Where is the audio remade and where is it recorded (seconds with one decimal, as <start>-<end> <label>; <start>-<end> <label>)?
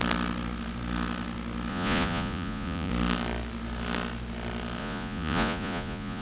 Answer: 0.0-1.7 recorded; 1.7-2.9 remade; 2.9-4.8 recorded; 4.8-6.2 remade